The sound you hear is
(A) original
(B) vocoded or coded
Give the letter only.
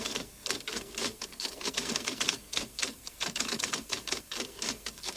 B